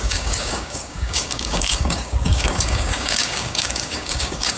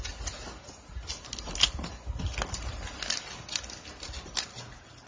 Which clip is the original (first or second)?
second